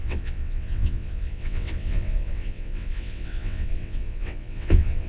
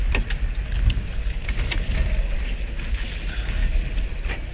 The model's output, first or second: first